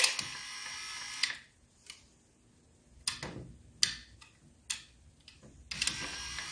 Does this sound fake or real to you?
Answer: real